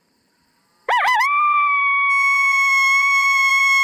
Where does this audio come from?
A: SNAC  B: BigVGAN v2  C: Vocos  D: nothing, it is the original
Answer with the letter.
B